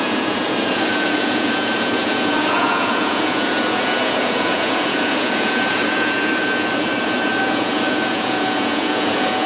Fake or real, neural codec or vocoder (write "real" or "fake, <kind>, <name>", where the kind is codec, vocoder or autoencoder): fake, vocoder, Vocos